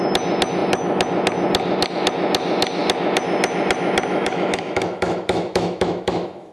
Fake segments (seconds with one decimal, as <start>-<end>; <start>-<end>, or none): 4.1-6.5